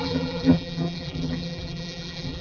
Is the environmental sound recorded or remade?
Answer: remade